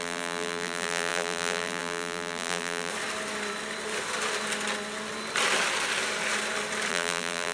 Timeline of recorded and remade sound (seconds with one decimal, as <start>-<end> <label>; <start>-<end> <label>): 0.0-2.9 remade; 2.9-6.9 recorded; 6.9-7.5 remade